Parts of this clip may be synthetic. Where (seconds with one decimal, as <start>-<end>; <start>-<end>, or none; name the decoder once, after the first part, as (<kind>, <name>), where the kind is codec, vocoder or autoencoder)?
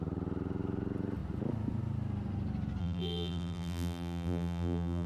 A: 2.8-5.1 (vocoder, BigVGAN v2)